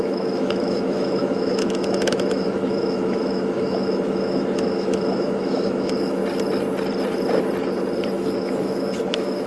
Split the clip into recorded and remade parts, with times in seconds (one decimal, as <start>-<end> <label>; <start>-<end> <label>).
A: 0.0-6.2 remade; 6.2-8.1 recorded; 8.1-9.5 remade